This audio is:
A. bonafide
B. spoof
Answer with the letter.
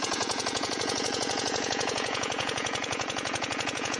B